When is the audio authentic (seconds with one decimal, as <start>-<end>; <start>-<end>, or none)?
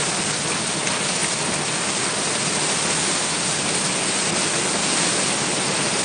0.0-6.0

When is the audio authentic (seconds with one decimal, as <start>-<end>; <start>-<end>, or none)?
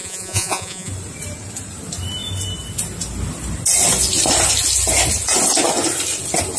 0.9-6.6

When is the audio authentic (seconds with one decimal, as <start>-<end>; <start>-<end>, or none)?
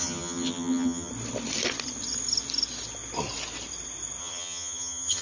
1.1-4.2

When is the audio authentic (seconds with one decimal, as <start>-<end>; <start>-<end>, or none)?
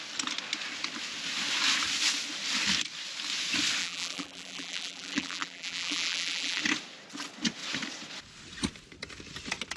0.0-3.8; 6.6-9.8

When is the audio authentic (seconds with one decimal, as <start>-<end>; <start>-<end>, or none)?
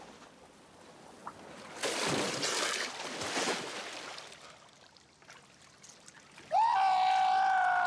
0.0-7.9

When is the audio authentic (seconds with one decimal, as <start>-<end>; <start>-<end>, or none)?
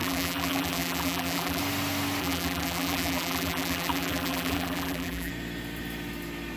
1.6-2.2; 5.3-6.6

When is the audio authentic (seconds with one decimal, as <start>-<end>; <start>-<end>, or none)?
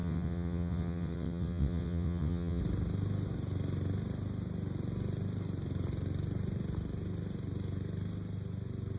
2.6-9.0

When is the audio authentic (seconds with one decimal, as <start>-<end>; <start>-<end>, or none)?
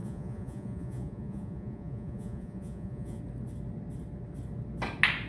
3.2-5.3